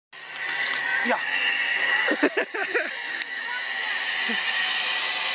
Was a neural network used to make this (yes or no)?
no